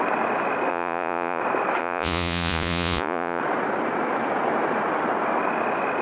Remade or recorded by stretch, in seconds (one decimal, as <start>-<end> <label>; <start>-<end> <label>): 0.0-0.7 recorded; 0.7-1.4 remade; 1.4-1.8 recorded; 1.8-3.4 remade; 3.4-6.0 recorded